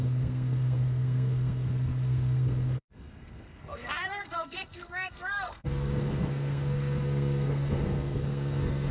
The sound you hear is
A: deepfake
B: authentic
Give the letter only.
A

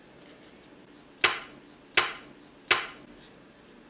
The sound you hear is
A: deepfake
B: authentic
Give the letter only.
B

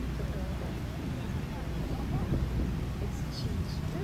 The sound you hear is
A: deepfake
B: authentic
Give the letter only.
B